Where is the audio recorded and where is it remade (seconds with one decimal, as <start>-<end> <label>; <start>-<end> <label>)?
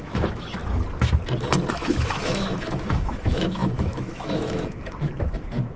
0.0-0.6 remade; 0.6-1.7 recorded; 1.7-5.8 remade